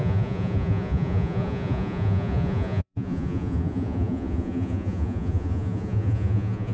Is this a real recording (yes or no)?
no